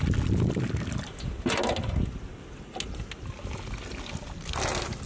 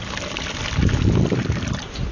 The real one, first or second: first